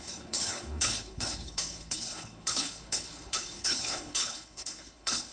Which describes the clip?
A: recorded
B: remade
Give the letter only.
B